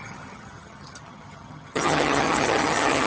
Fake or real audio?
fake